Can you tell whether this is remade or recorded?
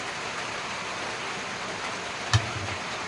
recorded